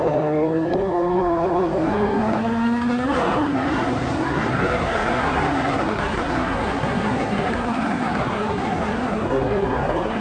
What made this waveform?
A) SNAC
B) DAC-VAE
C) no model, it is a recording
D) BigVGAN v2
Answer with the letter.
A